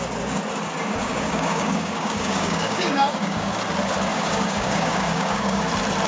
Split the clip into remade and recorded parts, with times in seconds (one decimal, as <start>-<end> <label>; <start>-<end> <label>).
0.0-1.0 recorded; 1.0-3.5 remade; 3.5-4.1 recorded; 4.1-5.6 remade; 5.6-6.1 recorded